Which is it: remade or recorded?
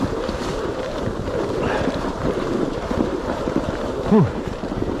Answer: remade